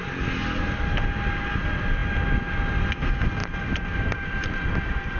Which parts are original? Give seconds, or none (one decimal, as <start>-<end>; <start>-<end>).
0.0-3.4; 4.7-5.2